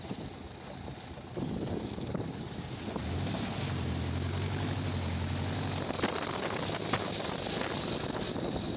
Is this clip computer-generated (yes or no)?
no